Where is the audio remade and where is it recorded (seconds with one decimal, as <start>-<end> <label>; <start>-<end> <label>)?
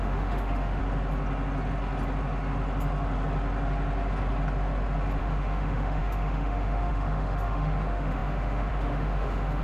0.0-0.8 remade; 0.8-5.2 recorded; 5.2-9.6 remade